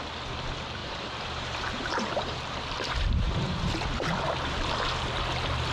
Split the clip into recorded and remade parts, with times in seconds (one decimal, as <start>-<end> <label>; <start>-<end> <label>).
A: 0.0-0.8 recorded; 0.8-3.7 remade; 3.7-5.7 recorded